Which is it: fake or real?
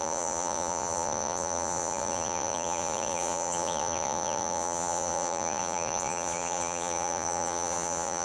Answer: fake